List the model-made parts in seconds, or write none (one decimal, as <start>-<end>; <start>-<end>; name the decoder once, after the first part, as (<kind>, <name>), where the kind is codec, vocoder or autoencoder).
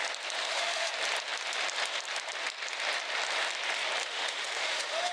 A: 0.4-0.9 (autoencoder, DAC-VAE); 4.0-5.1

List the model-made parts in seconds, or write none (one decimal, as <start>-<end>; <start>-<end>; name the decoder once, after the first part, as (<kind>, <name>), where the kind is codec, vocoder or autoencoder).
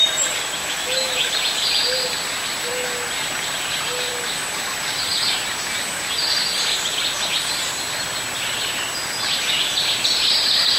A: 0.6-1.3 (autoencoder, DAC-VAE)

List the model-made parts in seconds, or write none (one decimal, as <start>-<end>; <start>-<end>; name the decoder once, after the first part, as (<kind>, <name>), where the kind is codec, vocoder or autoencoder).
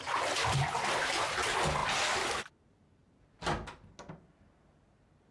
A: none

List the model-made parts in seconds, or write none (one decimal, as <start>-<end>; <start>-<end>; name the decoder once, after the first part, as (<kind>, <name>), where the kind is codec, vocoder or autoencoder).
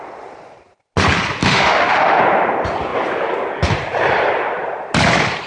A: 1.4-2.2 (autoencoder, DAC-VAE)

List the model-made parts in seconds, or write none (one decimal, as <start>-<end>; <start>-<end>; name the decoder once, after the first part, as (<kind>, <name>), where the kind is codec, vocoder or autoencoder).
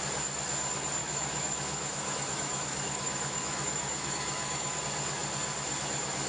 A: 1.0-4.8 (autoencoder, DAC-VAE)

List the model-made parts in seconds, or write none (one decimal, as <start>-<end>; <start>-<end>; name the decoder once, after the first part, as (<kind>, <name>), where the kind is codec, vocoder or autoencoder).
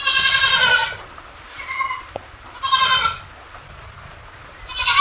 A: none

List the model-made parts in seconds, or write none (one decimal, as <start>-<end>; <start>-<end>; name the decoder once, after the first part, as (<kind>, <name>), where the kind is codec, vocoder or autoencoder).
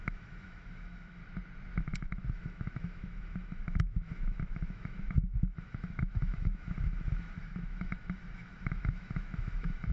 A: 0.0-1.2 (autoencoder, DAC-VAE); 1.8-9.9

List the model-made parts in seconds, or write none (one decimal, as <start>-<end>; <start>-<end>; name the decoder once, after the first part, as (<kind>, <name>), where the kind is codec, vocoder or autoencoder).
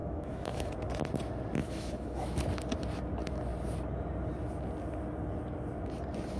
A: 0.0-0.7 (autoencoder, DAC-VAE); 1.6-2.4